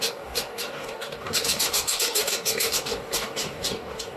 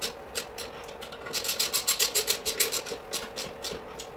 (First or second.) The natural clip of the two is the second